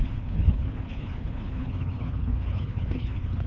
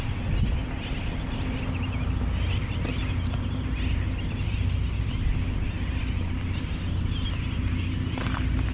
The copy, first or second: first